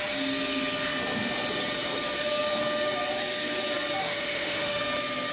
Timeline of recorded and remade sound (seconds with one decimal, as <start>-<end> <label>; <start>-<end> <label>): 0.0-4.0 recorded; 4.0-4.8 remade; 4.8-5.3 recorded